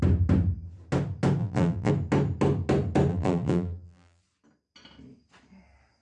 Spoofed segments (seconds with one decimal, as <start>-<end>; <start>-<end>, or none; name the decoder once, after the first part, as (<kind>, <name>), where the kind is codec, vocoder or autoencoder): 1.4-1.9 (vocoder, BigVGAN v2); 3.1-4.2